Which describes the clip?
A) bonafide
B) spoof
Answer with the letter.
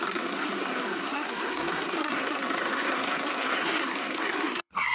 B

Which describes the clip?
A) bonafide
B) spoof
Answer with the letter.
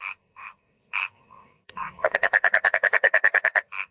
B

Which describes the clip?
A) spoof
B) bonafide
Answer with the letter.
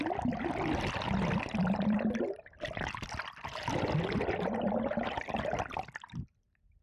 B